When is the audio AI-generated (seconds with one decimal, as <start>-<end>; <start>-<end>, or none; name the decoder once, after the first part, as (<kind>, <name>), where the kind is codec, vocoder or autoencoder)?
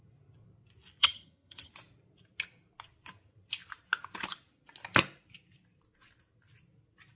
1.0-1.7 (vocoder, HiFi-GAN)